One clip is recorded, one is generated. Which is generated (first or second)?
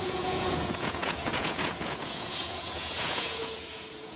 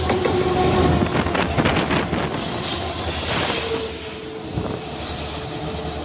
first